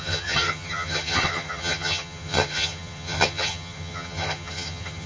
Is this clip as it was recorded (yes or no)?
no